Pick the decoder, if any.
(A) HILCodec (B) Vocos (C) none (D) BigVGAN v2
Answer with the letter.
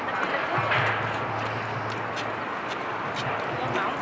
C